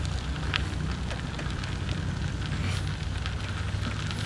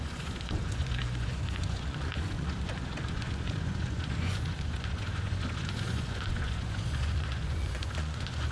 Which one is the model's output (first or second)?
second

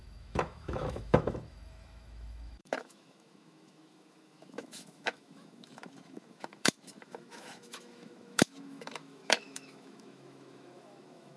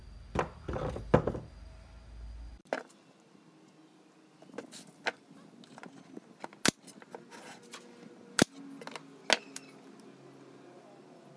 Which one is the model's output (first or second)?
first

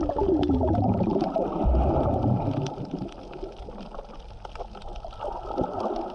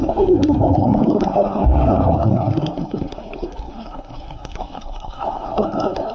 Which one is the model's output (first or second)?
second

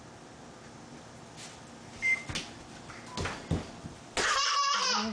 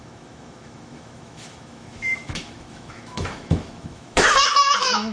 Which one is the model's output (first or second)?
second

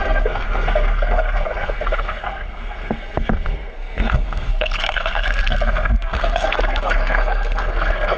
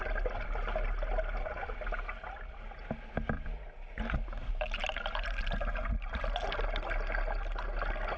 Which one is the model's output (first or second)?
first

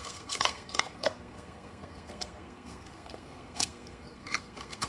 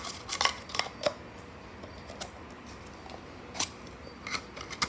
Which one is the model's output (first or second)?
first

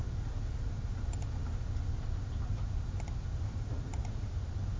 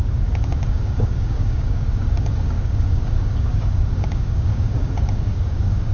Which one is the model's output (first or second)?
second